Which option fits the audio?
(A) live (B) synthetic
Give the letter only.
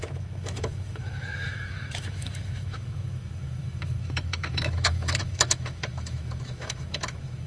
B